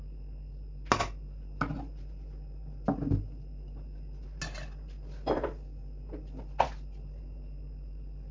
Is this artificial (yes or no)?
no